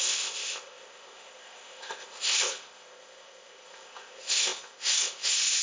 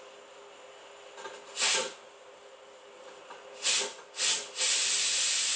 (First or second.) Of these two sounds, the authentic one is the second